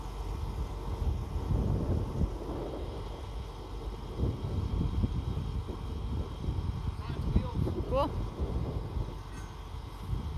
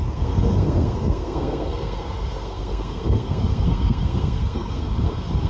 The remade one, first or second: second